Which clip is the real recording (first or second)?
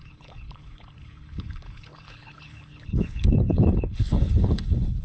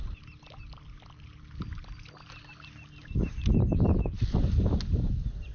second